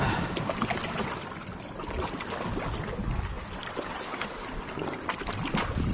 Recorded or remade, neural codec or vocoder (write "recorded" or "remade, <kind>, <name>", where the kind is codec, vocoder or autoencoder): recorded